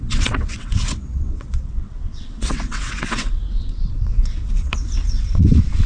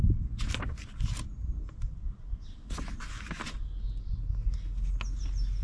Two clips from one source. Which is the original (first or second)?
second